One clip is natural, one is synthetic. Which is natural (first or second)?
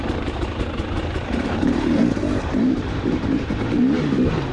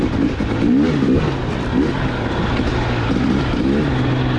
second